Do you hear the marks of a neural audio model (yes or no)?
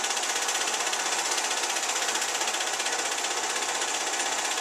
no